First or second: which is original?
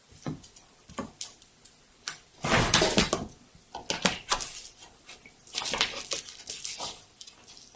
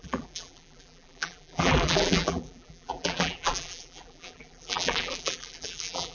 first